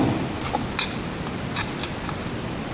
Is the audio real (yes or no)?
yes